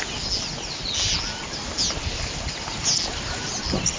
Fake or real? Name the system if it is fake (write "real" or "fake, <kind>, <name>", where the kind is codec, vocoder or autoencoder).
real